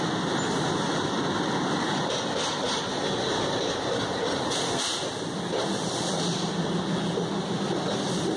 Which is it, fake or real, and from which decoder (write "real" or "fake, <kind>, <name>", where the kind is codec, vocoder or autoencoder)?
real